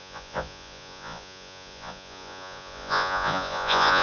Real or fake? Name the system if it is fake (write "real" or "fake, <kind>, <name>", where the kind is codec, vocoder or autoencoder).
fake, vocoder, Vocos